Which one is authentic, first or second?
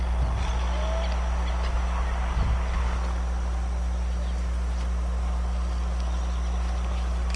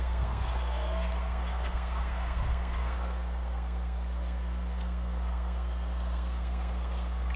first